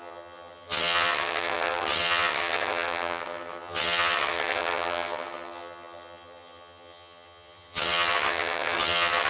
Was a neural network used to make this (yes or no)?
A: yes